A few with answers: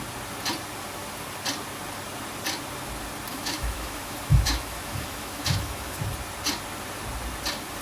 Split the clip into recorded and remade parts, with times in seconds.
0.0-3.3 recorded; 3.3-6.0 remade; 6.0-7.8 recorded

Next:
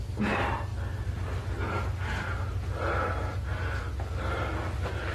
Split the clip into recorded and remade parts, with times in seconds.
0.0-5.1 recorded

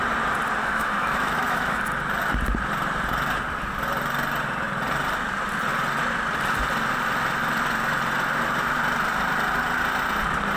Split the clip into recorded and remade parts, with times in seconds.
0.0-0.6 recorded; 0.6-1.8 remade; 1.8-10.6 recorded

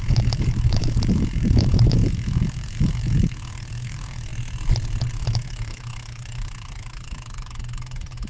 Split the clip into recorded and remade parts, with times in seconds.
0.0-4.3 remade; 4.3-5.1 recorded; 5.1-8.3 remade

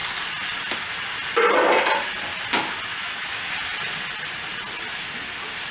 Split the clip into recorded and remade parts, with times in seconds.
0.0-2.9 recorded; 2.9-3.5 remade; 3.5-5.7 recorded